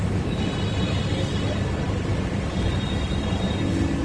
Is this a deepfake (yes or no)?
no